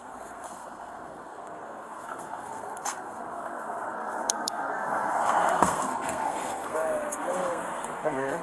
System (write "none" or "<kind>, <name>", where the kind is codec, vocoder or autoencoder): codec, SNAC